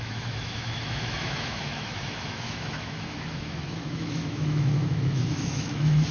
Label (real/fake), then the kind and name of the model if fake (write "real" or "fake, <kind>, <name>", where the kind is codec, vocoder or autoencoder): fake, autoencoder, DAC-VAE